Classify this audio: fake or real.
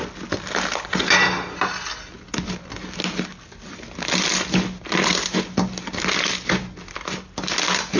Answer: real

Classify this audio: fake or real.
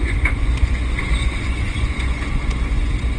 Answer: fake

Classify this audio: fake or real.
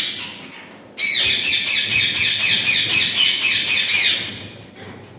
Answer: real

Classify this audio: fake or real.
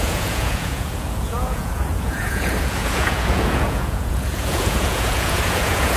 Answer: fake